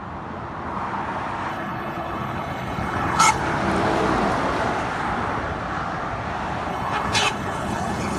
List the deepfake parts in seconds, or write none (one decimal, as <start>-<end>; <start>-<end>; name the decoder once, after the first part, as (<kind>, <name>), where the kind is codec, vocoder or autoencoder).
1.5-3.4 (codec, HILCodec); 6.7-8.2